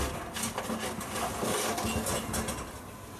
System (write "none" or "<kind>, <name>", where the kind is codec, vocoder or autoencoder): none